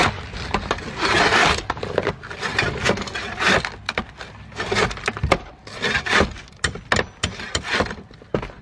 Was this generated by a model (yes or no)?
no